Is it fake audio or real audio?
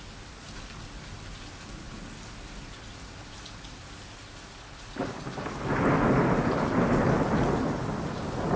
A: real